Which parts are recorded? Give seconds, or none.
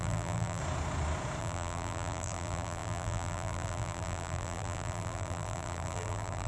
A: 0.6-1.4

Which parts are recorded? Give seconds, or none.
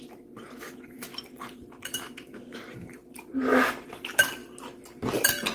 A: 1.1-1.7; 3.0-3.9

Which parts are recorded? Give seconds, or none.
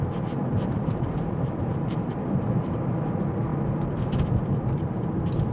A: 0.0-0.4; 2.7-5.5